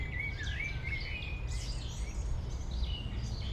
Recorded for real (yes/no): yes